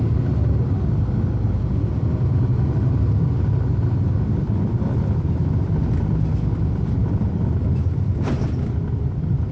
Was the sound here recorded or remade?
recorded